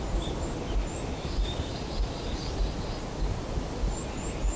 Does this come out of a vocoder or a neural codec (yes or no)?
no